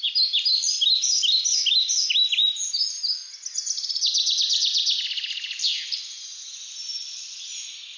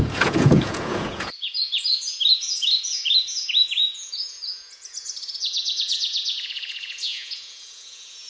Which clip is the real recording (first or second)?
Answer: first